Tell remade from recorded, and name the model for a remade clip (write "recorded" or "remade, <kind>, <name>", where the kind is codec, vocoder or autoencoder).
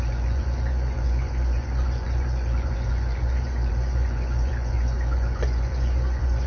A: remade, vocoder, Vocos